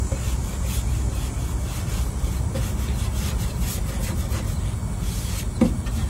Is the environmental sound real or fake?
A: real